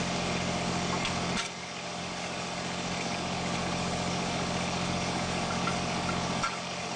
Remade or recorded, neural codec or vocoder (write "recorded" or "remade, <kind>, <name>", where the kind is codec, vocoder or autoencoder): remade, codec, DAC